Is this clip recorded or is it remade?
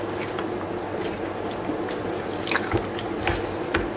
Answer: recorded